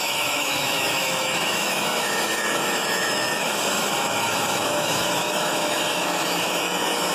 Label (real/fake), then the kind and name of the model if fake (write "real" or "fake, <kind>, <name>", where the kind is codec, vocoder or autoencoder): fake, autoencoder, DAC-VAE